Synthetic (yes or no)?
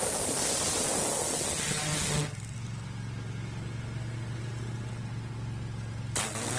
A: no